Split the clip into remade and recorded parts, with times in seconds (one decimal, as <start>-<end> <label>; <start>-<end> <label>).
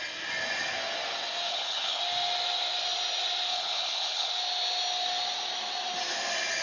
0.0-1.5 recorded; 1.5-2.0 remade; 2.0-3.5 recorded; 3.5-4.3 remade; 4.3-6.6 recorded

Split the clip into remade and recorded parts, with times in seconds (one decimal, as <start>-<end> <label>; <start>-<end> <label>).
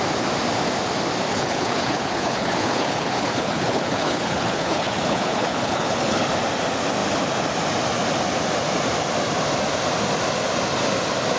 0.0-1.3 recorded; 1.3-6.3 remade; 6.3-11.4 recorded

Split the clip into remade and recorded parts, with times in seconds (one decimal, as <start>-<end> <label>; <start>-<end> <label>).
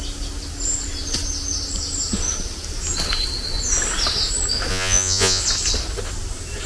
0.0-4.7 recorded; 4.7-5.4 remade; 5.4-6.7 recorded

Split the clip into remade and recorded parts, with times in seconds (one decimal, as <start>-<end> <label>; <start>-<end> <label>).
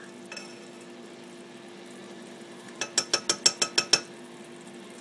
0.0-2.0 recorded; 2.0-2.8 remade; 2.8-5.0 recorded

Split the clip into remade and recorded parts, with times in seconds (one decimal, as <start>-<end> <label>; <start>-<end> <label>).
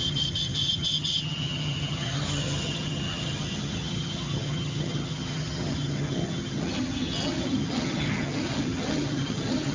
0.0-9.7 remade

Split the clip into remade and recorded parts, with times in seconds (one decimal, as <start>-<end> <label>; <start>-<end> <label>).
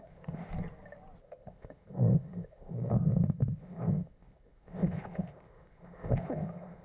0.0-0.5 remade; 0.5-1.2 recorded; 1.2-6.8 remade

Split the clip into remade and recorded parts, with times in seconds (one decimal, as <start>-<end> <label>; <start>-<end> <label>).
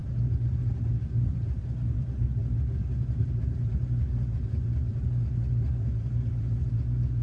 0.0-7.2 recorded